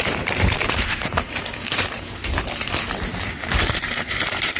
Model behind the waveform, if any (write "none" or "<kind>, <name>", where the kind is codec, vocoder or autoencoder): vocoder, BigVGAN v2